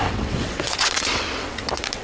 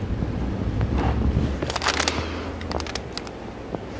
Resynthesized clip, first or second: first